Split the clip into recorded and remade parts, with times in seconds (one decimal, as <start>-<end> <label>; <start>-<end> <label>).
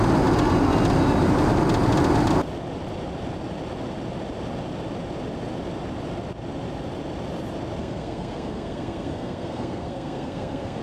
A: 0.0-7.8 recorded; 7.8-10.8 remade